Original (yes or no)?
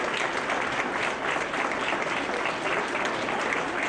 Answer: yes